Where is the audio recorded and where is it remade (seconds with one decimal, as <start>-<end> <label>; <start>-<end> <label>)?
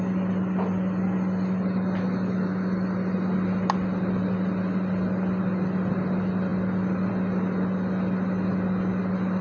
0.0-9.4 recorded